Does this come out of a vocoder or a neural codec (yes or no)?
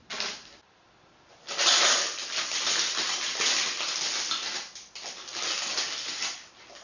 no